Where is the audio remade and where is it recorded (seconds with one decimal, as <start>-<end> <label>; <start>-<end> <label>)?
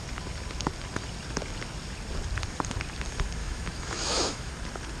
0.0-3.4 recorded; 3.4-4.5 remade; 4.5-5.0 recorded